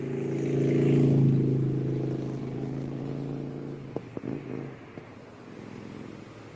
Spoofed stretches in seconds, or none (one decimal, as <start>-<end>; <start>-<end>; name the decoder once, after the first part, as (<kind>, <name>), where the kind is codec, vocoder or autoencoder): 2.4-3.0 (codec, SNAC)